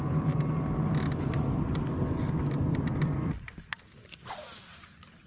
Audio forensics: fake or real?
fake